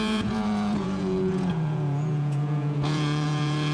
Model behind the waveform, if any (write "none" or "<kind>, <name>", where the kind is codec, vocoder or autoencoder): vocoder, Vocos